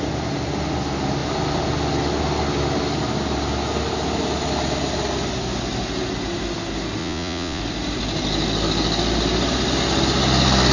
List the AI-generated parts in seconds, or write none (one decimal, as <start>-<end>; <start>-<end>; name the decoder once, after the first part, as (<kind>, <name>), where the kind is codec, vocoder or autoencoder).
7.0-7.6 (vocoder, Vocos)